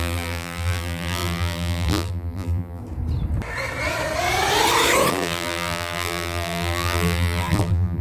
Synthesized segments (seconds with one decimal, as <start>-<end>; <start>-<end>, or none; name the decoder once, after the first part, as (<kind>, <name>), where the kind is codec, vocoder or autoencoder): 0.0-2.8 (vocoder, BigVGAN v2); 5.1-8.0